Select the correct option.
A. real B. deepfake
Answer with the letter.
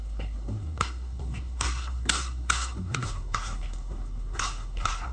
B